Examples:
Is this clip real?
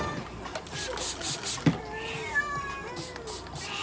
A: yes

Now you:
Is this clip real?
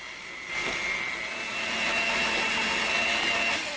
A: yes